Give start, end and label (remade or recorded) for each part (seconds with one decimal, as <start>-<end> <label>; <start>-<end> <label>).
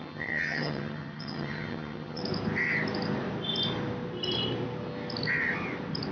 0.0-2.2 remade; 2.2-6.1 recorded